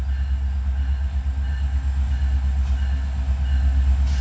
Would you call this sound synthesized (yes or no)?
no